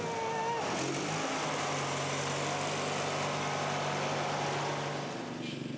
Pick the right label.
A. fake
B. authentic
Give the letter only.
B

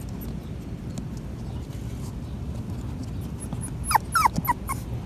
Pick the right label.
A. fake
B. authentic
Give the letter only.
B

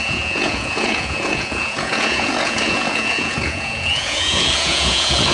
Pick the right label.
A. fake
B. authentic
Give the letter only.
A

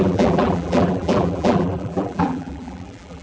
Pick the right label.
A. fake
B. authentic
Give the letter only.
A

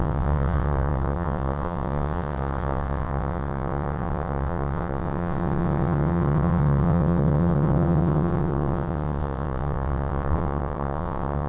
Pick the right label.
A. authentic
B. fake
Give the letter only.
B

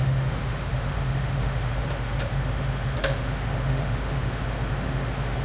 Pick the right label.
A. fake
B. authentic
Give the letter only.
A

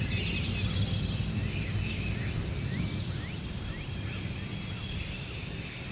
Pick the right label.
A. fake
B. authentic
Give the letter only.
B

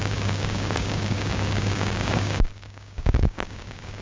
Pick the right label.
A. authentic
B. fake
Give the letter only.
B